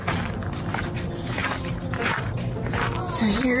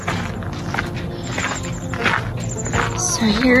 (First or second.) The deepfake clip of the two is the first